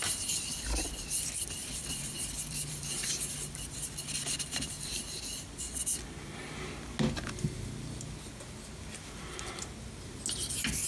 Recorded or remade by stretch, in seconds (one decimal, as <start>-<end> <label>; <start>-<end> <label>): 0.0-1.6 recorded; 1.6-4.0 remade; 4.0-10.9 recorded